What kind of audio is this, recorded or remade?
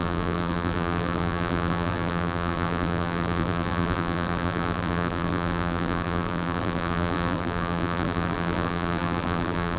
remade